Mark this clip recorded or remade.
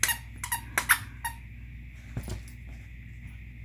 recorded